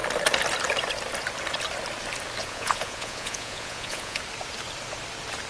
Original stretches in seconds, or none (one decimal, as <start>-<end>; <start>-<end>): 0.0-2.4; 4.2-5.5